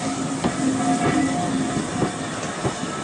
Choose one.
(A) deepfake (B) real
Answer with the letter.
B